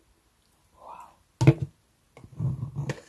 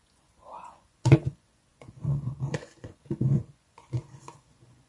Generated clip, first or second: second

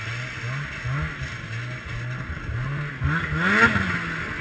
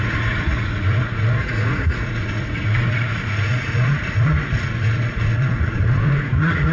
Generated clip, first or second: second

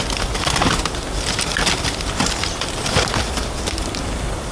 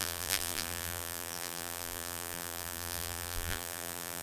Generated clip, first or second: second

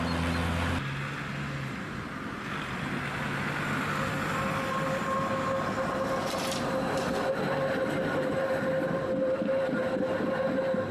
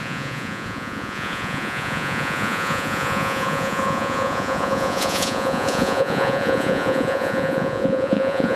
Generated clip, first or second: second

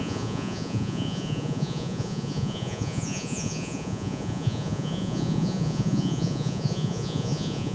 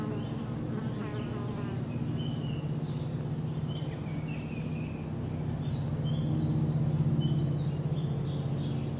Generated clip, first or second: first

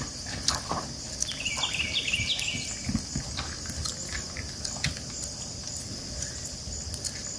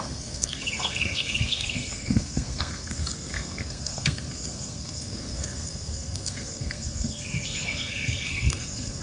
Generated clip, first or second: second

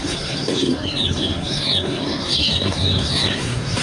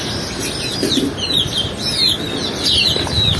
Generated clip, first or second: first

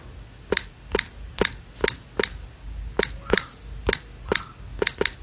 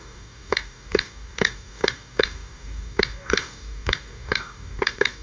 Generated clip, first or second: second